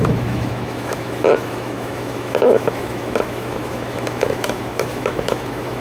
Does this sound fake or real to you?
fake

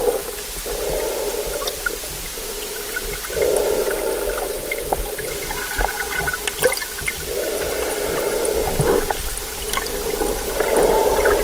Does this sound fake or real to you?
real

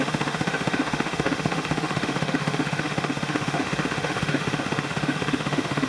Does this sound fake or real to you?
fake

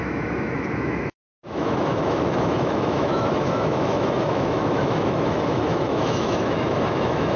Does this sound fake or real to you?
fake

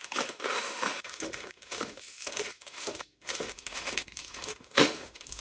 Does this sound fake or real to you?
fake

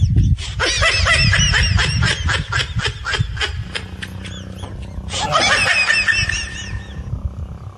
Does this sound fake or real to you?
real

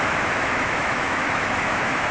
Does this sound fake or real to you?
fake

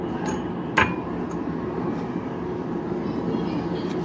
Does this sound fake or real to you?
real